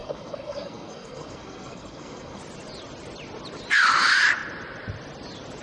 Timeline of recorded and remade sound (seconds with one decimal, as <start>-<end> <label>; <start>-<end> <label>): 0.0-2.4 remade; 2.4-5.6 recorded